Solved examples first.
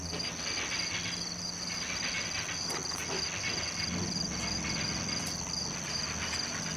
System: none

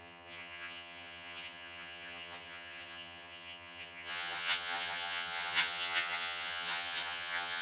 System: vocoder, HiFi-GAN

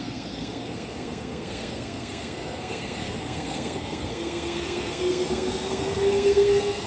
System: codec, SNAC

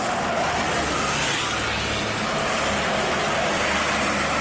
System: none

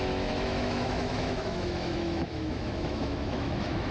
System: autoencoder, DAC-VAE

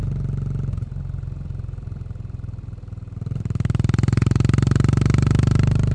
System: none